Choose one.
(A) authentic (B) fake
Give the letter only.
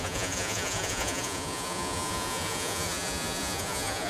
B